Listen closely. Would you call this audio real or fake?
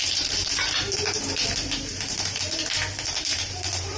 fake